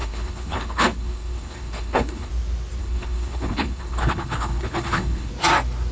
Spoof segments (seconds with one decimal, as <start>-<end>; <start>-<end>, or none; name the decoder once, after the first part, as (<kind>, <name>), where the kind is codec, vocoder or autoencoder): 0.0-2.3 (codec, HILCodec); 2.8-5.3